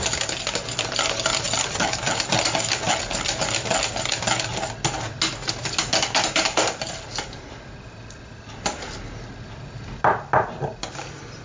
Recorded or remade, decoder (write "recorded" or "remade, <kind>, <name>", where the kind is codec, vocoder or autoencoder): recorded